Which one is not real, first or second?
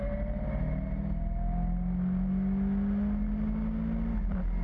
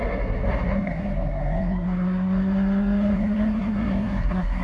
second